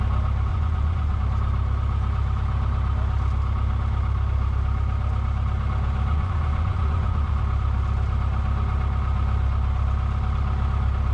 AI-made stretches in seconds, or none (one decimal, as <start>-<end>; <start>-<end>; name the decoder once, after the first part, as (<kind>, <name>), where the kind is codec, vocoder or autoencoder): 0.5-1.2 (vocoder, Vocos); 6.1-7.4